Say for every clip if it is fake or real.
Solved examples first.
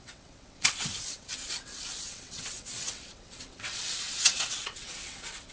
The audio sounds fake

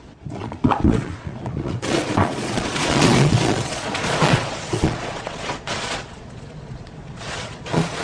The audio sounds fake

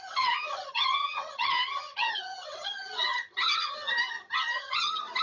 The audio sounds fake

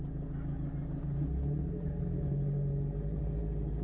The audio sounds real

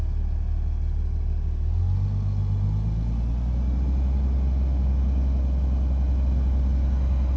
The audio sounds real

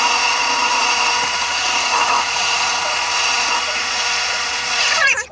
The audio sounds fake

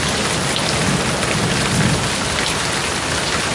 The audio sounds real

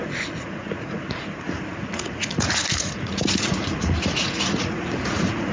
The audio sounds fake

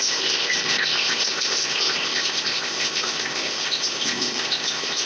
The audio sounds fake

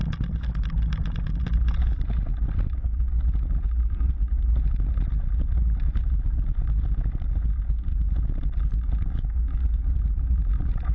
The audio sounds real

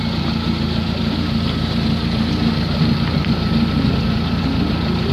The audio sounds fake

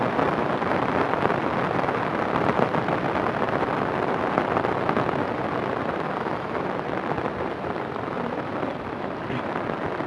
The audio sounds fake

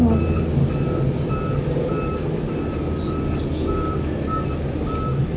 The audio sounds real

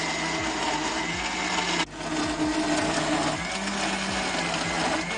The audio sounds real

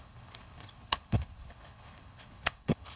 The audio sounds fake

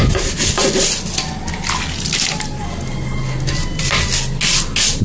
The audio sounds real